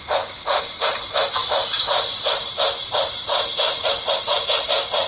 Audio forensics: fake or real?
real